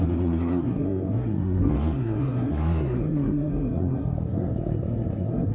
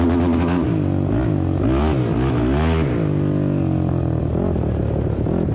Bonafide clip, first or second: second